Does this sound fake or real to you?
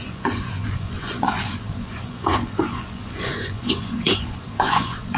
fake